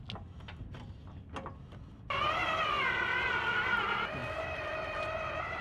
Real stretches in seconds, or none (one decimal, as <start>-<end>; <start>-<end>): 0.0-5.6